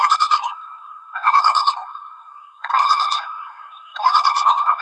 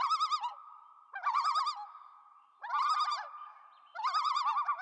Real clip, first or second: second